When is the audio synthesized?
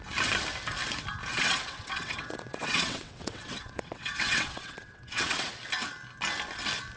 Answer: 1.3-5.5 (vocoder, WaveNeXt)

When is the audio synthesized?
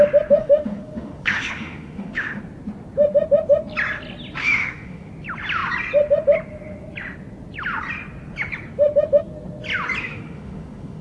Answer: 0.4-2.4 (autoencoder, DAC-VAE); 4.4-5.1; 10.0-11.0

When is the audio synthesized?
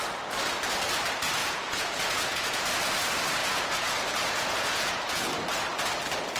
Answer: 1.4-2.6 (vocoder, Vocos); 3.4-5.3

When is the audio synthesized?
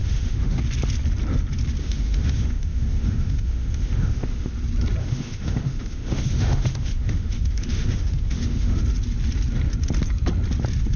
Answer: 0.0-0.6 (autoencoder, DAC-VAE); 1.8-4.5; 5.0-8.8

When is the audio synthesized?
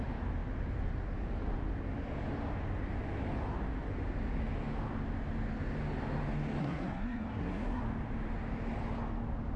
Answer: 6.6-7.8 (codec, SNAC)